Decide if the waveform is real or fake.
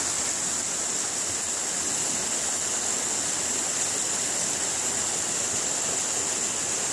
real